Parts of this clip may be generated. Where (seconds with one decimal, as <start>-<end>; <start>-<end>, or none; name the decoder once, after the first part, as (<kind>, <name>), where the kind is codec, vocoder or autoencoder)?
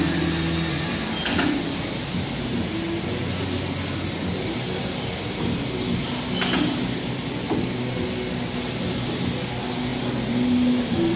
none